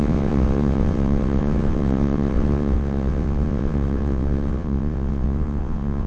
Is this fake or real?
fake